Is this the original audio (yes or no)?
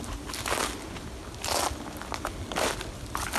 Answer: yes